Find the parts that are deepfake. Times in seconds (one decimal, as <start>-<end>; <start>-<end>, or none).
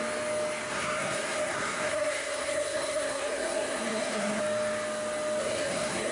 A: 0.7-4.4; 5.4-6.1